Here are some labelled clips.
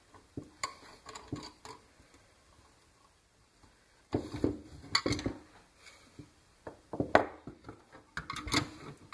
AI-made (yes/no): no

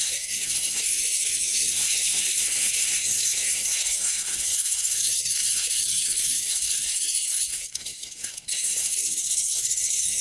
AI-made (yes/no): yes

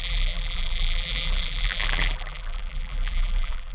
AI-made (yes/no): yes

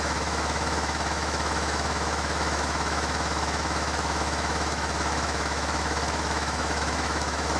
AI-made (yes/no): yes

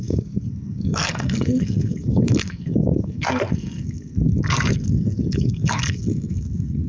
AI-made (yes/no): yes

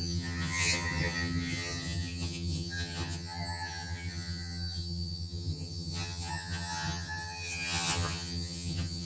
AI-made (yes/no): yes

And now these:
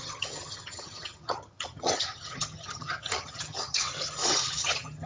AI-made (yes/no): yes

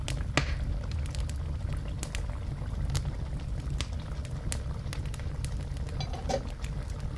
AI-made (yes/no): no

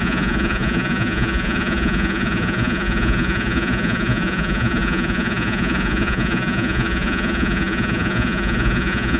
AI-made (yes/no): yes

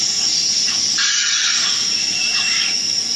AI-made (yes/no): no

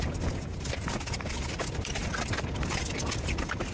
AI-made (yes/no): no